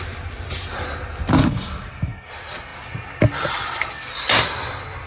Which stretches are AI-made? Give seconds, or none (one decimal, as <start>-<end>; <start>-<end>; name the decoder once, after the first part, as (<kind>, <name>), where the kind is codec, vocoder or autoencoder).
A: 1.4-2.3 (codec, DAC)